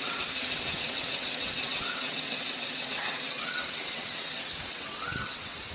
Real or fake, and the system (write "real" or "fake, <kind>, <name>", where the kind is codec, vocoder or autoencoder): fake, vocoder, WaveNeXt